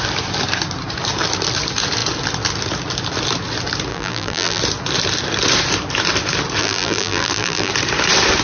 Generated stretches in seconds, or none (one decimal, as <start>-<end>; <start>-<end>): 3.9-4.6; 6.6-7.7

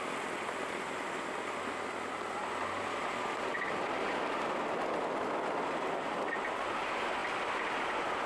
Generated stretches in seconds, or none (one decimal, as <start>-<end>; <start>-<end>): none

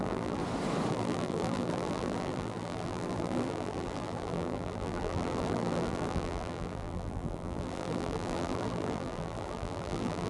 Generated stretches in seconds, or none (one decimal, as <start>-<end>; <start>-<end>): 0.0-0.4; 0.9-10.3

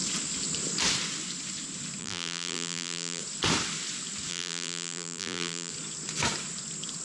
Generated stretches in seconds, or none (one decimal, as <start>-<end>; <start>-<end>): 2.0-3.2; 4.3-5.7